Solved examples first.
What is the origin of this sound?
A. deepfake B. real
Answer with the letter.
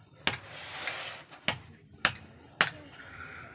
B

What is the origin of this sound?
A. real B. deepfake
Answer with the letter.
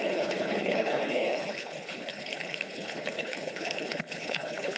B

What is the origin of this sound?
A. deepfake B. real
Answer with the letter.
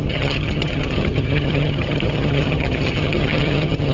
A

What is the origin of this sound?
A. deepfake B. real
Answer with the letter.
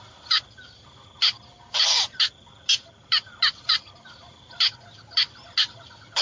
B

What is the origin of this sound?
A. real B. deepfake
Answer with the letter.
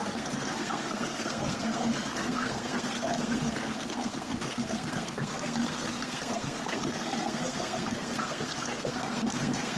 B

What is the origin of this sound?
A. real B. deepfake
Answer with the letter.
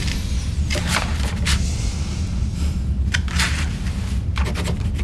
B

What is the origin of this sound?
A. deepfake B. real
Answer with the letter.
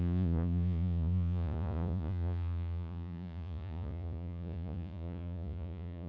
A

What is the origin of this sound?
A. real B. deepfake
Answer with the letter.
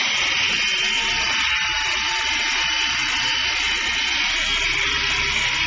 A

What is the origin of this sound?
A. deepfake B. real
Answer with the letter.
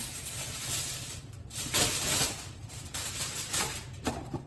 A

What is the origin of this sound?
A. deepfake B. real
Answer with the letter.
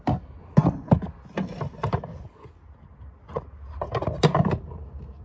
B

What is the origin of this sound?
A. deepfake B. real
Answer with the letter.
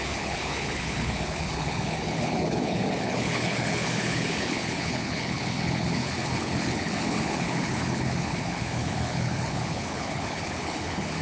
A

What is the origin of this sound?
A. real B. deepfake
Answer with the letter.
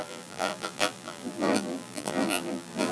B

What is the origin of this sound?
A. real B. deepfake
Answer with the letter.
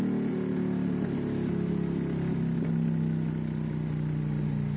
A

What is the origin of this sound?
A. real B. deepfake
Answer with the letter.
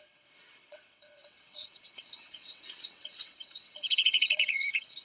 B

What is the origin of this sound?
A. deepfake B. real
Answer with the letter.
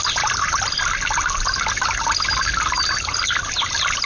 B